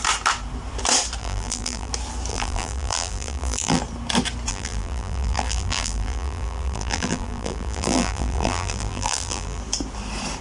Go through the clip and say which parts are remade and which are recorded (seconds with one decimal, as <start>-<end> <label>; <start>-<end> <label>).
0.0-1.2 recorded; 1.2-1.9 remade; 1.9-2.3 recorded; 2.3-3.8 remade; 3.8-4.5 recorded; 4.5-9.6 remade; 9.6-10.4 recorded